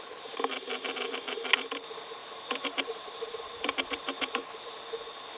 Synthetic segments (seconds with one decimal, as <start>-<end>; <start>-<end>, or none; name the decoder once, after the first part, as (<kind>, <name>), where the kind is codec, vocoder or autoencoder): 2.2-4.8 (vocoder, BigVGAN v2)